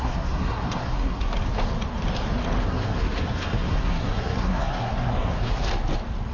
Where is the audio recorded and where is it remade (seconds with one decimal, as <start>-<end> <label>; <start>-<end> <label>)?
0.0-1.3 remade; 1.3-2.6 recorded; 2.6-5.6 remade; 5.6-6.3 recorded